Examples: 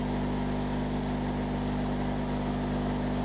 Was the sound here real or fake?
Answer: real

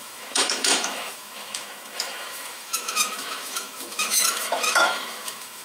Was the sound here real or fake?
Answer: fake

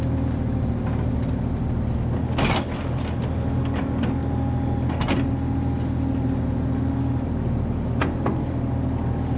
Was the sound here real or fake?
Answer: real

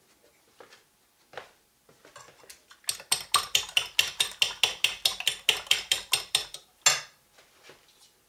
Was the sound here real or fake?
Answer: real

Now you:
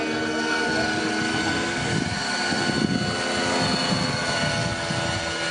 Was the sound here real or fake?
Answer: real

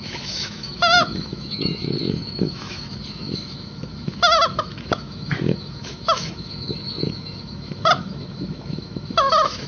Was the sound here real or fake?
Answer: fake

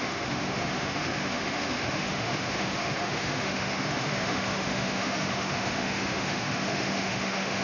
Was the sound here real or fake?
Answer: fake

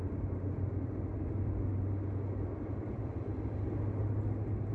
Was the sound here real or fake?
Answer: real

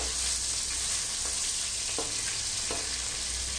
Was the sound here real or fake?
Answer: real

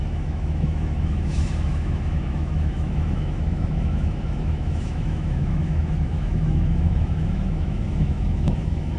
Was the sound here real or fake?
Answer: fake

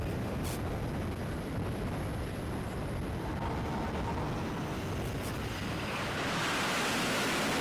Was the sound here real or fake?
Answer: real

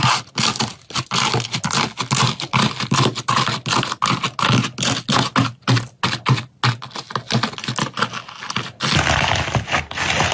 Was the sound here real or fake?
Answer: real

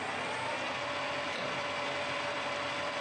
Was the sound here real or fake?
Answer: real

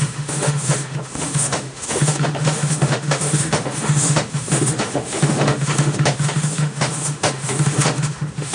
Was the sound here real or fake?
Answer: fake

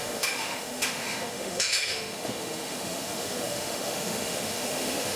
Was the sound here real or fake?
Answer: fake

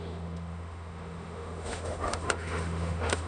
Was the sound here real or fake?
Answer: fake